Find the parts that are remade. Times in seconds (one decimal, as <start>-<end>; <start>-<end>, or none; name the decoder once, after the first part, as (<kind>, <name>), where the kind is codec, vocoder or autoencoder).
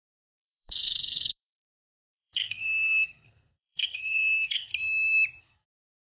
0.0-4.7 (codec, SNAC); 5.4-6.0